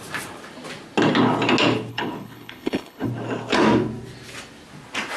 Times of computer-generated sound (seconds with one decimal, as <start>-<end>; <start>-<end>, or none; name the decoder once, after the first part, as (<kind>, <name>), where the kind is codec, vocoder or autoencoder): 1.9-3.1 (codec, HILCodec)